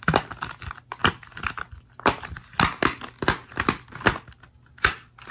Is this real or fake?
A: real